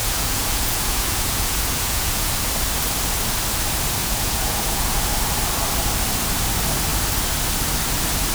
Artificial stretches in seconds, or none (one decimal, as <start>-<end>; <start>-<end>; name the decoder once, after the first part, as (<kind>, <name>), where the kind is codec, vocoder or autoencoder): 0.0-2.3 (vocoder, Vocos); 4.0-5.0